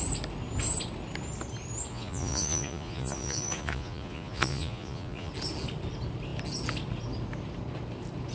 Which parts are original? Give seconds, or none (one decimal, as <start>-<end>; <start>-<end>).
0.0-1.9; 5.3-8.3